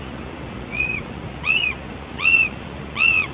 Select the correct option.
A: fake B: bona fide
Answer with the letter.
A